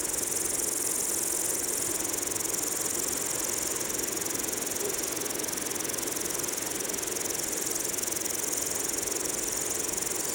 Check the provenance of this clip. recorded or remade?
recorded